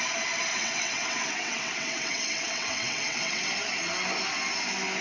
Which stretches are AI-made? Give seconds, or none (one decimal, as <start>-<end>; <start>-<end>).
0.5-3.5